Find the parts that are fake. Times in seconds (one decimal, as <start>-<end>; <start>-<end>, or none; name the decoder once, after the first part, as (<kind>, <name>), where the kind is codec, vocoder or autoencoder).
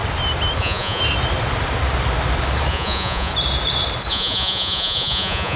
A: 0.6-1.0 (vocoder, Vocos); 2.7-3.3; 4.1-5.6